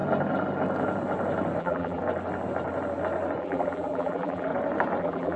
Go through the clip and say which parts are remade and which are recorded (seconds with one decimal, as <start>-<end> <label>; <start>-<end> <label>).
0.0-1.6 recorded; 1.6-2.0 remade; 2.0-3.4 recorded; 3.4-4.5 remade; 4.5-5.0 recorded; 5.0-5.4 remade